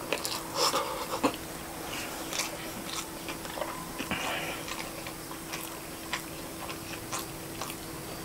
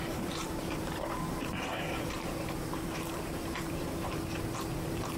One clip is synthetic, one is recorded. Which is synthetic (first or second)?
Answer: second